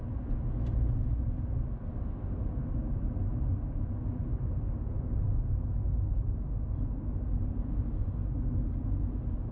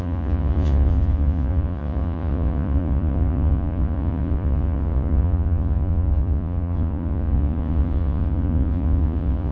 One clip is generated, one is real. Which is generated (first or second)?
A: second